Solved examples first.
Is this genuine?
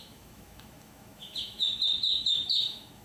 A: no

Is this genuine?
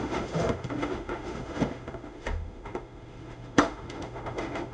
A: no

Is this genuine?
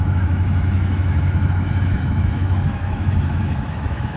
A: no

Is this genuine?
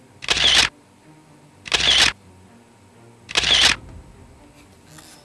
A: yes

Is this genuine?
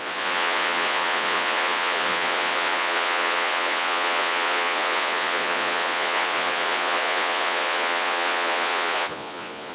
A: no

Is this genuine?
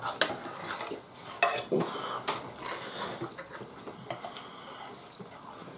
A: yes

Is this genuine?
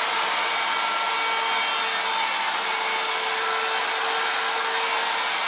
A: yes